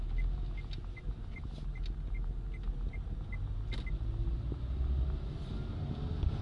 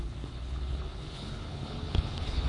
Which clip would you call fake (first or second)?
second